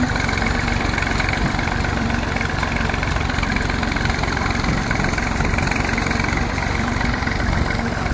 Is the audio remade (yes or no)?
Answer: yes